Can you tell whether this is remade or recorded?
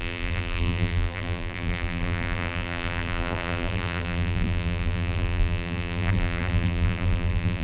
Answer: remade